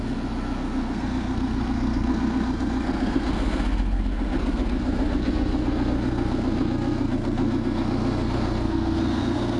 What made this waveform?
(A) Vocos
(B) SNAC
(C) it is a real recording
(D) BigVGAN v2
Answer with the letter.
B